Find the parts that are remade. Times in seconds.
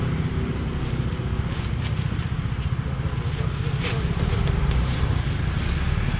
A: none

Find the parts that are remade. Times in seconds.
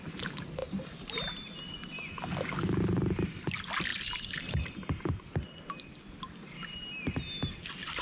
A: none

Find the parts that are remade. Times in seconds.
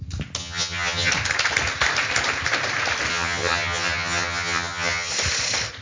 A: 0.4-1.1 (vocoder, HiFi-GAN); 3.1-5.1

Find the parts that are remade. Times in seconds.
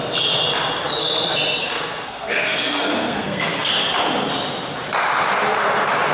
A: 1.6-3.7 (codec, SNAC)